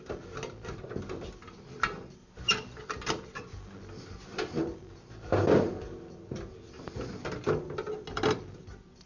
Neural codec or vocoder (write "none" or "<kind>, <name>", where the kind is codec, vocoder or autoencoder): none